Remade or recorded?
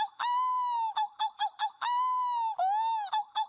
recorded